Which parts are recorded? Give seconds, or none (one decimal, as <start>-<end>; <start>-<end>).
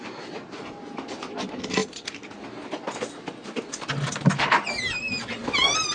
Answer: 0.0-5.9